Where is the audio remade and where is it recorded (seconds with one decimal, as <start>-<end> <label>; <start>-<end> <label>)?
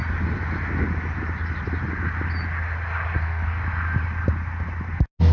0.0-3.2 recorded; 3.2-3.6 remade; 3.6-5.3 recorded